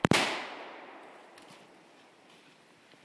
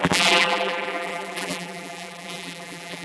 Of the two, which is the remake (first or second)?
second